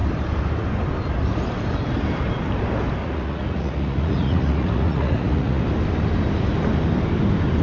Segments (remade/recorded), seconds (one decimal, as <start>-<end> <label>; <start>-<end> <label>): 0.0-3.0 recorded; 3.0-5.6 remade; 5.6-7.6 recorded